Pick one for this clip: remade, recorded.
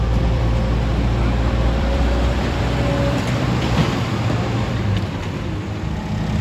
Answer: remade